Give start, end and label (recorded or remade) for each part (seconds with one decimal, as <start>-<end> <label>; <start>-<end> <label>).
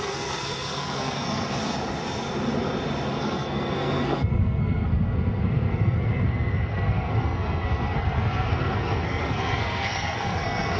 0.0-1.6 remade; 1.6-3.2 recorded; 3.2-10.8 remade